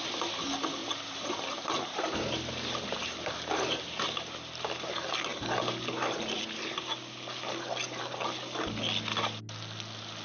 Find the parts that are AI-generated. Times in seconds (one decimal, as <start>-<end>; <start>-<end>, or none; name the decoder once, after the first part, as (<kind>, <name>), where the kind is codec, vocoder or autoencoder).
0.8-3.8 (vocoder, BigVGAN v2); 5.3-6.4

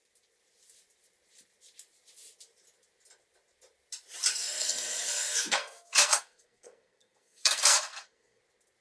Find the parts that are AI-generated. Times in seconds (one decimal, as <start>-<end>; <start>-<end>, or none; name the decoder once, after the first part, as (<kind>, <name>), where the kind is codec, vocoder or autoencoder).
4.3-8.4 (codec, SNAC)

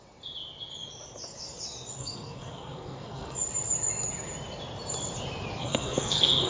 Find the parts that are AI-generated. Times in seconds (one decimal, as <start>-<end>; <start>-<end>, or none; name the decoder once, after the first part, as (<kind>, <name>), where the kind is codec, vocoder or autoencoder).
2.0-3.4 (codec, SNAC); 5.6-6.5

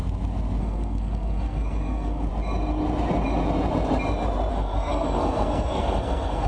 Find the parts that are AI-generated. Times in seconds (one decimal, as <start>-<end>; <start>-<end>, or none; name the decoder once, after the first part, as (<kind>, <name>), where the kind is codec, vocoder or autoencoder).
0.6-2.3 (codec, SNAC); 4.5-6.5

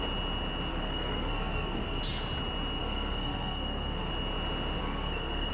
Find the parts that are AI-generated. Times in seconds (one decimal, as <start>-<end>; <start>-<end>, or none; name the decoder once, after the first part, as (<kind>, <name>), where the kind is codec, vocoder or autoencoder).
0.7-2.0 (codec, SNAC); 2.8-4.1; 4.8-5.5

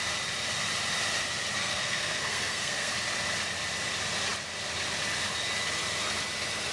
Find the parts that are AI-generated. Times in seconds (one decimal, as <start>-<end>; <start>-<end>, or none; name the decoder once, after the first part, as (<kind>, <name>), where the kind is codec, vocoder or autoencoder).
1.6-2.9 (codec, SNAC)

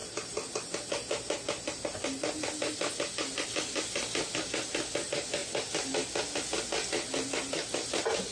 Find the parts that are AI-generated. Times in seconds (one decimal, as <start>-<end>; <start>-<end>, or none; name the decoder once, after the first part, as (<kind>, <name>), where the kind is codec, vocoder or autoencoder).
none

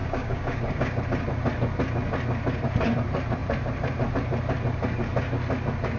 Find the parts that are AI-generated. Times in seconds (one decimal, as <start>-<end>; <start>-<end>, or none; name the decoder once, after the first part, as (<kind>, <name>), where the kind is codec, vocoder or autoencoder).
0.0-1.0 (codec, DAC)